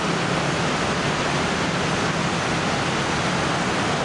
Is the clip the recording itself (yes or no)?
yes